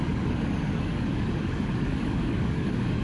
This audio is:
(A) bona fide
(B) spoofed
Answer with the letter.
B